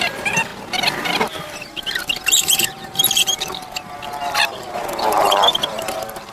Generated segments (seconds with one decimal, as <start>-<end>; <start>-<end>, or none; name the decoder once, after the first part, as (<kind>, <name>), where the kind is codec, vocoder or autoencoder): 0.0-0.5 (vocoder, BigVGAN v2); 1.4-3.6; 4.2-6.3